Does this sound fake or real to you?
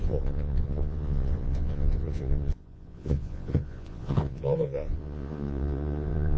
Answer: fake